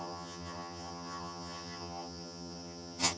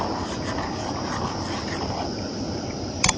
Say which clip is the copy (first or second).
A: first